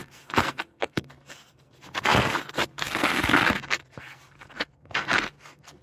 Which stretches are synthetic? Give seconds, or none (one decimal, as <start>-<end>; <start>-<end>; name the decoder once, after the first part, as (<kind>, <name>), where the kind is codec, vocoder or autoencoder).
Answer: 0.0-5.8 (codec, SNAC)